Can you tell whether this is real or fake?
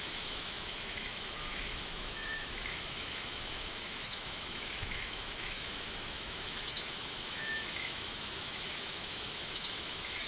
fake